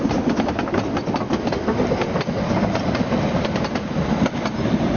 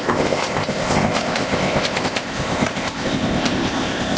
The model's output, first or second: second